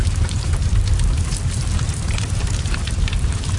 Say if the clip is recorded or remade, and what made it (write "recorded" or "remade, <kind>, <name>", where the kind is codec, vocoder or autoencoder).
remade, vocoder, BigVGAN v2